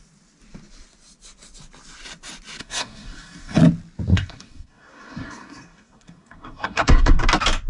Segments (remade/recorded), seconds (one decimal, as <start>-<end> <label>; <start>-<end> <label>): 0.0-2.6 recorded; 2.6-3.6 remade; 3.6-4.1 recorded; 4.1-7.2 remade; 7.2-7.7 recorded